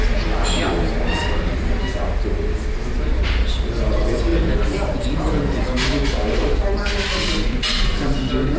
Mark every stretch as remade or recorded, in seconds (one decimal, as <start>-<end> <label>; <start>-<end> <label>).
0.0-4.3 recorded; 4.3-5.0 remade; 5.0-8.6 recorded